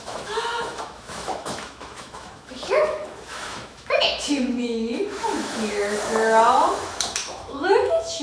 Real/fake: fake